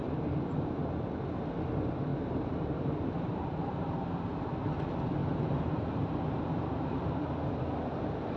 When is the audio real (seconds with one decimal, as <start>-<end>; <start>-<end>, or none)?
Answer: 0.8-2.1; 4.5-5.2; 6.4-8.4